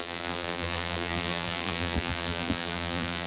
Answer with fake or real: fake